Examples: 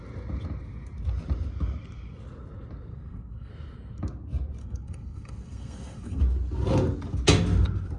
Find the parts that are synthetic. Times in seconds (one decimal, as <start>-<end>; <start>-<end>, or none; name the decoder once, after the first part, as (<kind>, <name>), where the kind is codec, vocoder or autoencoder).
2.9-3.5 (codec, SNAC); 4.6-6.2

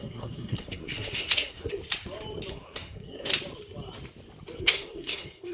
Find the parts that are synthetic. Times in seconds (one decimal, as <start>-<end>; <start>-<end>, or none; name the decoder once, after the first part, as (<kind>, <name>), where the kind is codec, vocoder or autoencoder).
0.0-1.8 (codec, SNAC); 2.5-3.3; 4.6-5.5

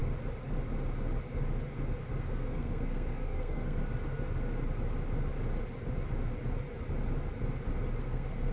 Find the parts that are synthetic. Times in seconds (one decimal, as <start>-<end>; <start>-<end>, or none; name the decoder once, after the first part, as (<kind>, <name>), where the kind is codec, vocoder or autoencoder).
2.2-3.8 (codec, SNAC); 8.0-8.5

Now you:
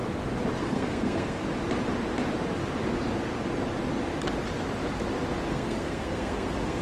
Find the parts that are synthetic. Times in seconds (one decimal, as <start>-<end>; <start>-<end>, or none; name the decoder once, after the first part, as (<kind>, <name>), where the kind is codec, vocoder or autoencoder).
0.6-1.4 (codec, SNAC); 5.5-6.8